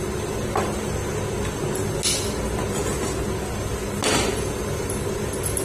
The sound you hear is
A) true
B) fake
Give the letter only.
A